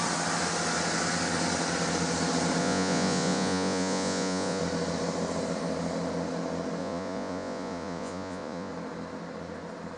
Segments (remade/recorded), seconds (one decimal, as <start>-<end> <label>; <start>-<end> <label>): 0.0-2.6 recorded; 2.6-4.6 remade; 4.6-6.8 recorded; 6.8-8.7 remade; 8.7-10.0 recorded

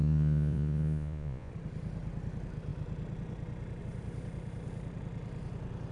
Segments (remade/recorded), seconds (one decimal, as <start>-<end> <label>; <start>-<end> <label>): 0.0-1.5 remade; 1.5-5.9 recorded